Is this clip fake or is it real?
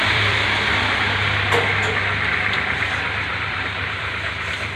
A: fake